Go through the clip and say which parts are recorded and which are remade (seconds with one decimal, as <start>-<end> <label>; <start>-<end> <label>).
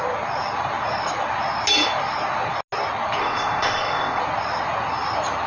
0.0-3.2 recorded; 3.2-4.2 remade; 4.2-5.5 recorded